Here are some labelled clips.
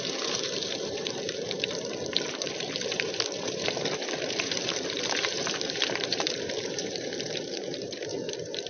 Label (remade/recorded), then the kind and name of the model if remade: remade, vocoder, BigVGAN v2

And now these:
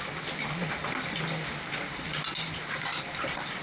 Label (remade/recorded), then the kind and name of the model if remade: recorded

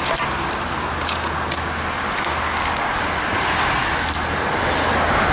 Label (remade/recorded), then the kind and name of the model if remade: recorded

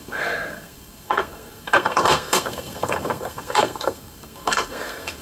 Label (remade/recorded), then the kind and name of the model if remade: remade, codec, SNAC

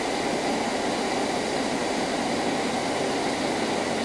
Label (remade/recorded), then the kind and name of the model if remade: recorded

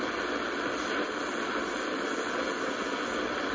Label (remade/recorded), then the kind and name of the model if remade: recorded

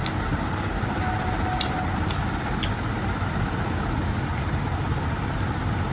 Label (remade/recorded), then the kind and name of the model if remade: recorded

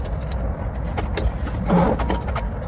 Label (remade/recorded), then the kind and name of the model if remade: recorded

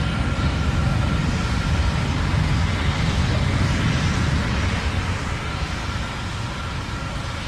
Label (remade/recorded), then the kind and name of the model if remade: recorded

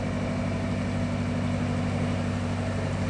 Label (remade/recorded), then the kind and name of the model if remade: recorded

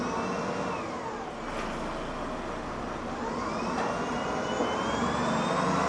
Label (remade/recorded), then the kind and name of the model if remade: recorded